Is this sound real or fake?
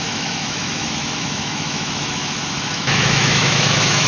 fake